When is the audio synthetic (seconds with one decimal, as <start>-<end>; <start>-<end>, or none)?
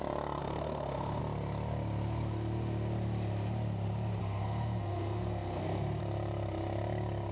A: 0.4-1.2; 4.2-6.0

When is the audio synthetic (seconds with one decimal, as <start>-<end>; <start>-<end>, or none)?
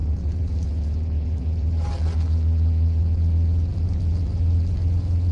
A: 0.0-1.9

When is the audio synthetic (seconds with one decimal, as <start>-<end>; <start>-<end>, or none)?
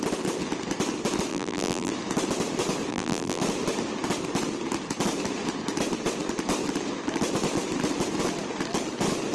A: 1.3-1.9; 2.9-3.4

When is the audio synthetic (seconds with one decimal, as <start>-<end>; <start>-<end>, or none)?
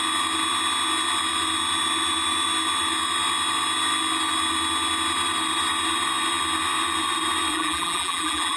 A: 7.5-8.6